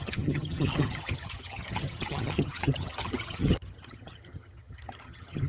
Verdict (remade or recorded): remade